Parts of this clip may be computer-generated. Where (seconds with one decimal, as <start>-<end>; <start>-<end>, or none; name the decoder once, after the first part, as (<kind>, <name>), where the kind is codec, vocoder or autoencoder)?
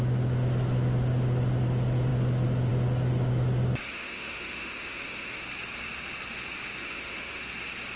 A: 3.8-5.4 (autoencoder, DAC-VAE); 6.8-7.4